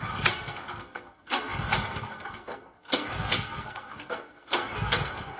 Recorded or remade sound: remade